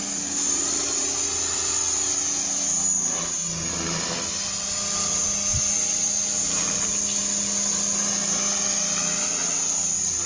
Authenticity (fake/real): real